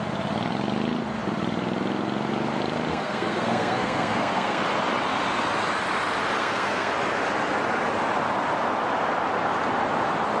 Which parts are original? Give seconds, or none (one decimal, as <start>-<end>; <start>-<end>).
0.0-2.9; 4.6-6.4; 6.9-10.4